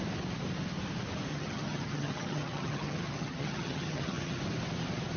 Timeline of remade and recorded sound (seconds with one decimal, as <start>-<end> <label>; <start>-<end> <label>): 0.0-1.3 recorded; 1.3-4.4 remade; 4.4-5.2 recorded